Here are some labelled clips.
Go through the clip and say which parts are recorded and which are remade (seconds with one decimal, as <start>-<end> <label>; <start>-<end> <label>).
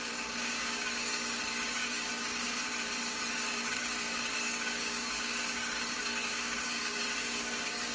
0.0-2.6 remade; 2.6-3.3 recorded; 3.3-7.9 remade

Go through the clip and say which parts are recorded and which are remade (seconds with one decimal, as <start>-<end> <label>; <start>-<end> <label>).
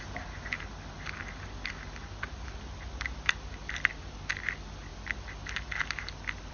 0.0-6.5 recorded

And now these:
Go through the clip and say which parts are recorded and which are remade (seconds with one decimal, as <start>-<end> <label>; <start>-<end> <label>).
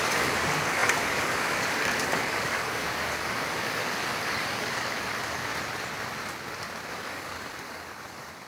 0.0-5.5 remade; 5.5-6.9 recorded; 6.9-8.5 remade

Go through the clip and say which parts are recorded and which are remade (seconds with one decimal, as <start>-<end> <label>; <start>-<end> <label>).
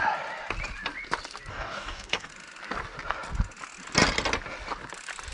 0.0-1.5 recorded; 1.5-2.3 remade; 2.3-5.3 recorded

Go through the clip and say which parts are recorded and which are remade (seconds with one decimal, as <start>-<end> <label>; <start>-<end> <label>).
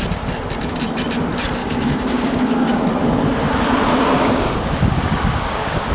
0.0-1.6 recorded; 1.6-2.8 remade; 2.8-3.9 recorded; 3.9-5.9 remade